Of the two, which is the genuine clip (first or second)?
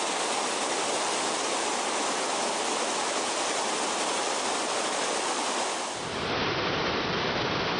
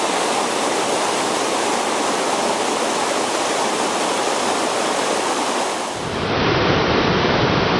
first